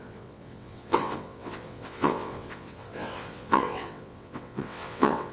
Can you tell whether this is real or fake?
fake